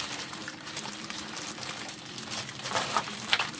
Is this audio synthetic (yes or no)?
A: yes